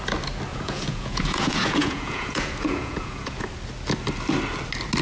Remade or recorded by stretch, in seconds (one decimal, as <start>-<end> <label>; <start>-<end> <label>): 0.0-0.5 recorded; 0.5-3.5 remade; 3.5-5.0 recorded